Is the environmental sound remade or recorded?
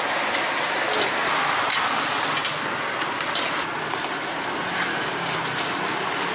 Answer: recorded